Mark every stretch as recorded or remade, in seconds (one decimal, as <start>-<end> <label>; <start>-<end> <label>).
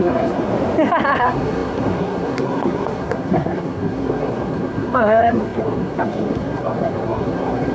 0.0-0.5 remade; 0.5-1.2 recorded; 1.2-7.7 remade